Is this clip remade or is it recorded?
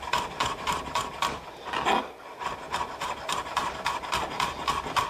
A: recorded